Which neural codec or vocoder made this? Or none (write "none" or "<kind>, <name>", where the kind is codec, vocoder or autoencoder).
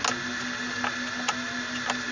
none